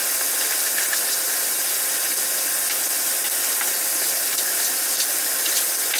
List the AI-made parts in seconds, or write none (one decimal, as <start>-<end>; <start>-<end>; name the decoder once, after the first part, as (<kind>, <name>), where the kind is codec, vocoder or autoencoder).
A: none